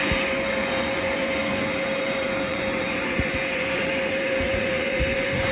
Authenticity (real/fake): fake